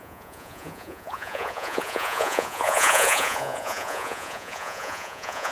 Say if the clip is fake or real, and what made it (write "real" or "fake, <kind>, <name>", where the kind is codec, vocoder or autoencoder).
fake, vocoder, Vocos